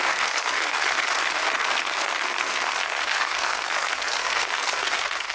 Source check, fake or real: fake